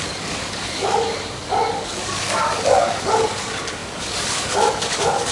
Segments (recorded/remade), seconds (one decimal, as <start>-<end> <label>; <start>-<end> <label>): 0.0-5.3 remade